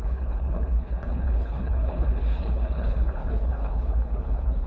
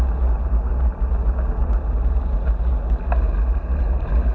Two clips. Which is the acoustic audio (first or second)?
second